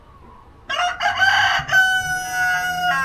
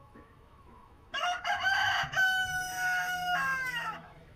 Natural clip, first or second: first